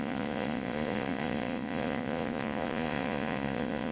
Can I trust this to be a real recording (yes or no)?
no